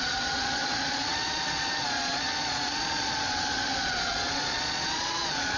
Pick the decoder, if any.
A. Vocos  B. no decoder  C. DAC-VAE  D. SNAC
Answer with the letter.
A